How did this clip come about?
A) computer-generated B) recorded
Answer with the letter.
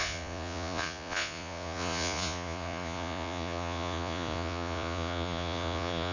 A